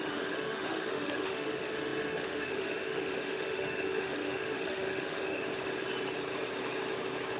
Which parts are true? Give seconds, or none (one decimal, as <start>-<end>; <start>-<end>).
5.5-7.4